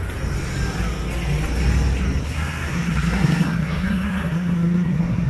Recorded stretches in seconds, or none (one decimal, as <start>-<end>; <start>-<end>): 0.0-2.2